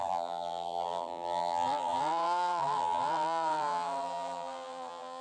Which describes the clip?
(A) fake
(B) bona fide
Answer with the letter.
A